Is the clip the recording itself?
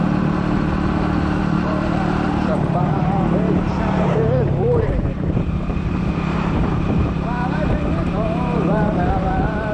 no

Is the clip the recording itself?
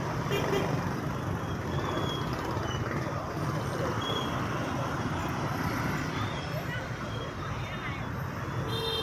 yes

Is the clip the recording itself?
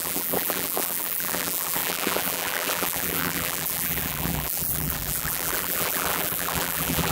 no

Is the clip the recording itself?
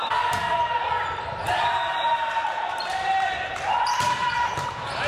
no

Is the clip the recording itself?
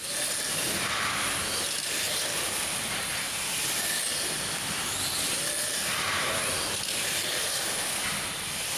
yes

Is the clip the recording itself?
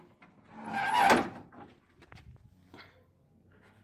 yes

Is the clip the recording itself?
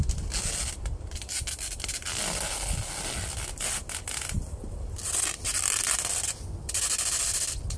yes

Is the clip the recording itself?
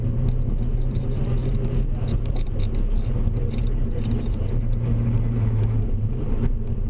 no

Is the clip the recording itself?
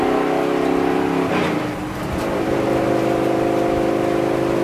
yes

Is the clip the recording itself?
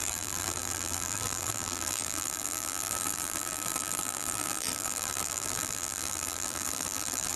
no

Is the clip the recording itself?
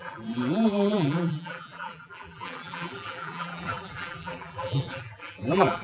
no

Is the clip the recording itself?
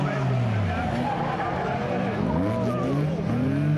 yes